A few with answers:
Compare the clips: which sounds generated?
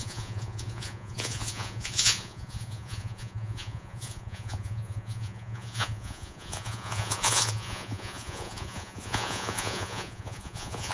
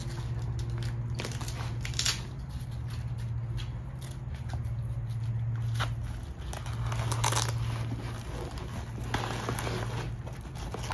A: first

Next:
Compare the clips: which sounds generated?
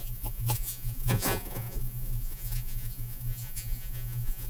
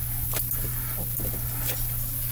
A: first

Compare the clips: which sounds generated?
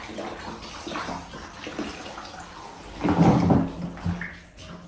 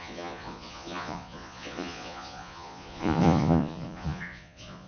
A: second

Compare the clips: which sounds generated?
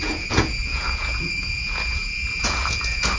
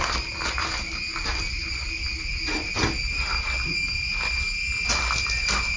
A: first